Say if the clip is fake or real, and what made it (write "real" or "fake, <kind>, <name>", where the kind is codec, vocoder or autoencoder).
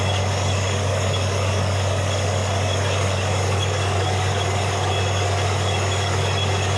fake, codec, DAC